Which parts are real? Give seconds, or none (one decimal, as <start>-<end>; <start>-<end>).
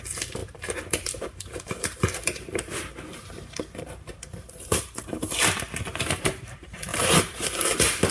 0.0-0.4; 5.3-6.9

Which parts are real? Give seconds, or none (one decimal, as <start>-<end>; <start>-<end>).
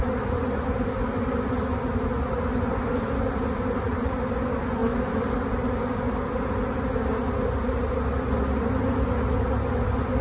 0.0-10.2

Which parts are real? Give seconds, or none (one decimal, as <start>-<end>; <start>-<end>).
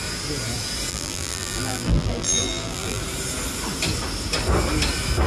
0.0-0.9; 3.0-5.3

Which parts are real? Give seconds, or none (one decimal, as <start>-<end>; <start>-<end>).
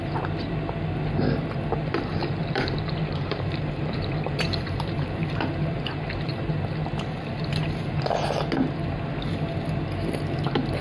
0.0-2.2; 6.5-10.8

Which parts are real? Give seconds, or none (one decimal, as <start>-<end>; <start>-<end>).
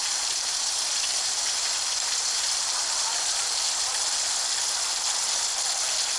2.2-6.2